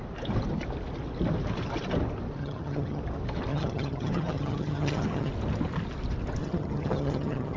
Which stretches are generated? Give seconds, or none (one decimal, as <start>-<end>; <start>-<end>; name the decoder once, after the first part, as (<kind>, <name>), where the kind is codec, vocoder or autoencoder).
2.4-3.0 (vocoder, HiFi-GAN); 3.5-5.3; 6.4-7.6